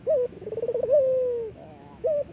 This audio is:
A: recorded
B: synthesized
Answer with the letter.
B